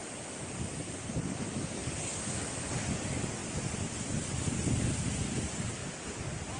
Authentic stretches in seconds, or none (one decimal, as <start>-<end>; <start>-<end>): 0.0-6.6